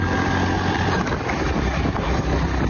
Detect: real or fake real